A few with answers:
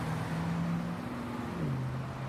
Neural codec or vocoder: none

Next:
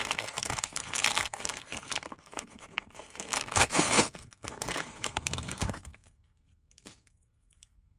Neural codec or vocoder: codec, SNAC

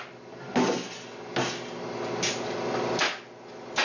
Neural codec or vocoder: none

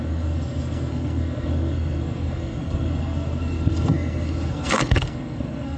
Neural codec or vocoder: codec, SNAC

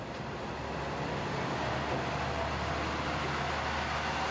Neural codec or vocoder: none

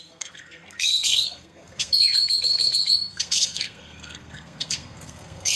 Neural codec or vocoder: codec, SNAC